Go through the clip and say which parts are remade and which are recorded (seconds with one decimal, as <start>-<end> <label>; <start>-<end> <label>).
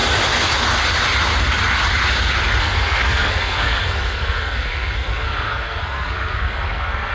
0.0-2.6 recorded; 2.6-7.1 remade